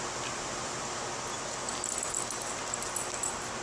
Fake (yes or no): no